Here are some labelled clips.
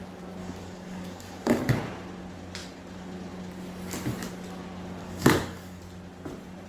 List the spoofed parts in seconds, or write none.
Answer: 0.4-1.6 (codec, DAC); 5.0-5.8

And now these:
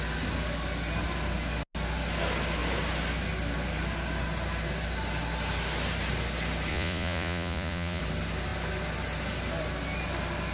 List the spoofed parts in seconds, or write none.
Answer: 6.7-8.0 (vocoder, Vocos)

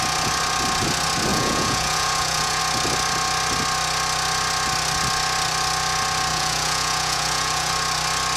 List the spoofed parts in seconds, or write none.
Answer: 1.3-2.6 (vocoder, Vocos); 6.3-7.7

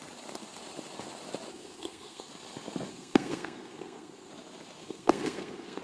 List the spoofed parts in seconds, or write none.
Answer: 1.5-2.3 (codec, SNAC); 2.9-4.3; 4.8-5.8

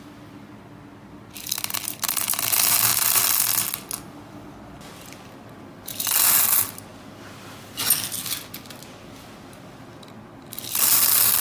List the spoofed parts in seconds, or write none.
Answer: none

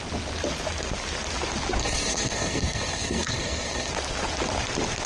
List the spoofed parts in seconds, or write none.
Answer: 1.8-3.9 (codec, SNAC)